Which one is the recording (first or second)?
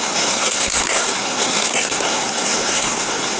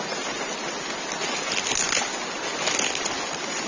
second